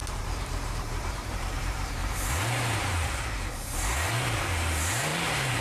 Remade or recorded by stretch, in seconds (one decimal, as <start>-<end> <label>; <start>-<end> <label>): 0.0-3.4 remade; 3.4-5.1 recorded; 5.1-5.6 remade